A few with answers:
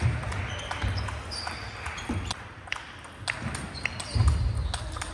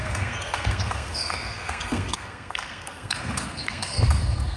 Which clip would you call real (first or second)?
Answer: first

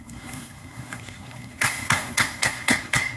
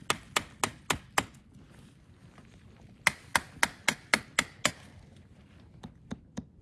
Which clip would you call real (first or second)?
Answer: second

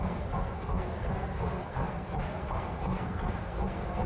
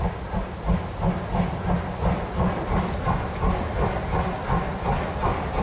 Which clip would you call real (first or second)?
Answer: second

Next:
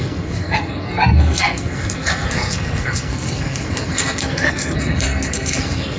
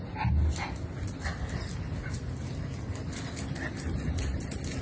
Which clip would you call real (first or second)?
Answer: second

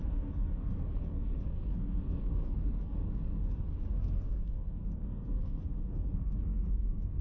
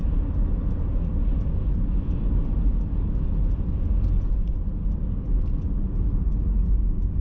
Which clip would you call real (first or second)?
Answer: second